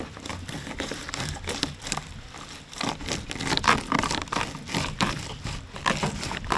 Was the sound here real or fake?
fake